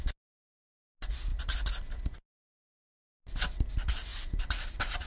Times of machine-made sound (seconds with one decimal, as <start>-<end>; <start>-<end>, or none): none